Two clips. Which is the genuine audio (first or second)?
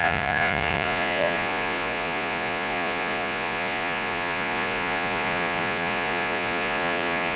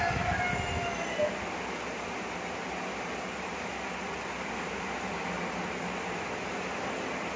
second